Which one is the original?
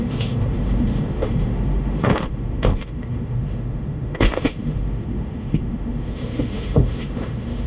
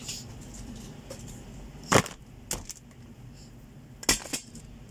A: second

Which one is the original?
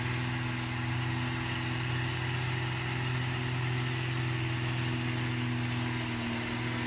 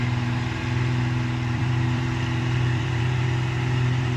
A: first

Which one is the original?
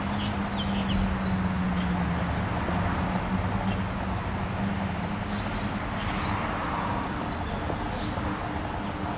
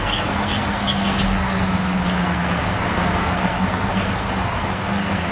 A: first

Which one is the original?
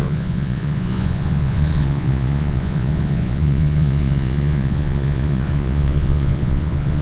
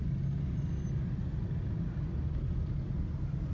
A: second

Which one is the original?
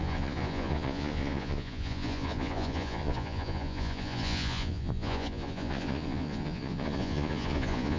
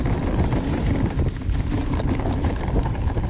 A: second